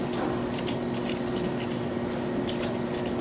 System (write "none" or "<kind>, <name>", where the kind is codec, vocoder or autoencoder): none